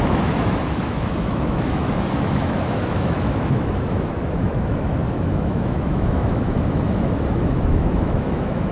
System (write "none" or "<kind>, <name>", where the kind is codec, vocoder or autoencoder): autoencoder, DAC-VAE